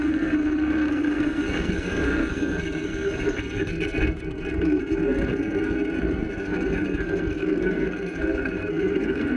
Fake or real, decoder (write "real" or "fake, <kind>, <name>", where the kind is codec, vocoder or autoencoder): fake, codec, SNAC